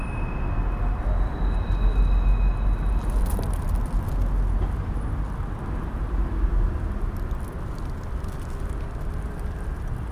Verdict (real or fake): real